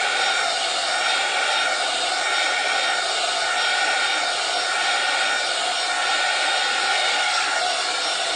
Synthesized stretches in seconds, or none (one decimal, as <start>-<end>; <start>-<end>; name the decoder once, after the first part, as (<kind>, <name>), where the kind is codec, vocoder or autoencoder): 7.1-7.6 (codec, SNAC)